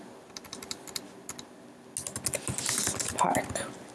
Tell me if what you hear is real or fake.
real